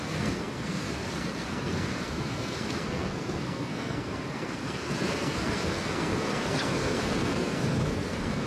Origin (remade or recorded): remade